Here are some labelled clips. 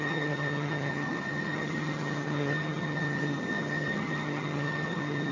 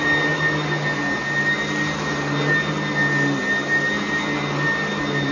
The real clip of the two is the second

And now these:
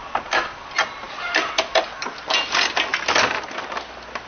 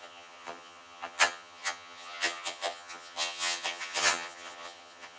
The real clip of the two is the first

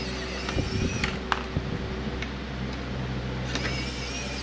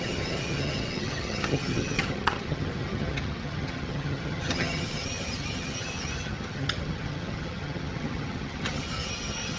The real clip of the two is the first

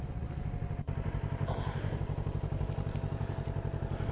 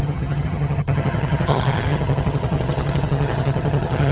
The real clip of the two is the first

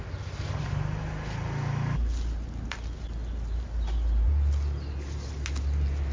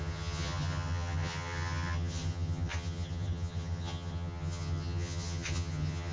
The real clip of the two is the first